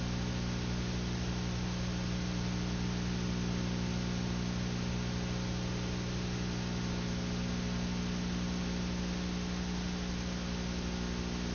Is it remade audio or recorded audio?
recorded